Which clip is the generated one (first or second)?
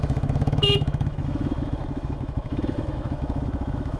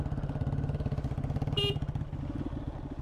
first